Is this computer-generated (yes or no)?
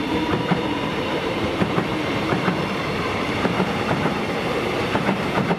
yes